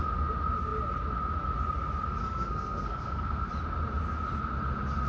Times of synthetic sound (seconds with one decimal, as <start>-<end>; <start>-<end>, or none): 2.2-3.5